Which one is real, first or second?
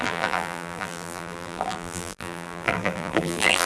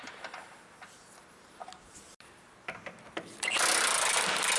second